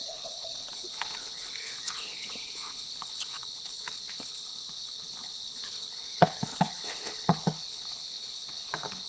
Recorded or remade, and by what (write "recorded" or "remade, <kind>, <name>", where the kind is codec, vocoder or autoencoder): remade, codec, HILCodec